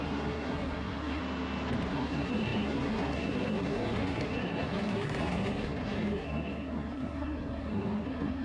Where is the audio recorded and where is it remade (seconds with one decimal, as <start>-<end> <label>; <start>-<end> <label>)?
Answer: 0.0-1.2 remade; 1.2-1.9 recorded; 1.9-8.4 remade